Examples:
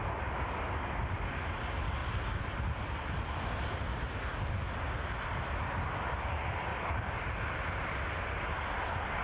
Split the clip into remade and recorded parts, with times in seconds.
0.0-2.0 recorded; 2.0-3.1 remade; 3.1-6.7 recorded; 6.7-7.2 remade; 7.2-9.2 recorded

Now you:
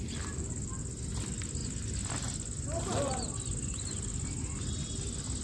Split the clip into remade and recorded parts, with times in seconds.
0.0-5.4 recorded

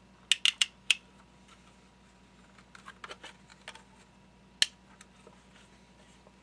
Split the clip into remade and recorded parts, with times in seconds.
0.0-0.6 recorded; 0.6-1.1 remade; 1.1-6.4 recorded

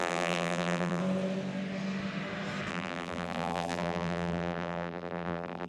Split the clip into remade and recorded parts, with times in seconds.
0.0-1.0 remade; 1.0-2.7 recorded; 2.7-5.7 remade